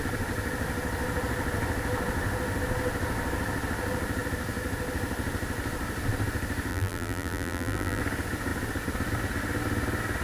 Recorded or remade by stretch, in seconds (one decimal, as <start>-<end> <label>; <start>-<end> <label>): 0.0-6.7 recorded; 6.7-8.0 remade; 8.0-10.2 recorded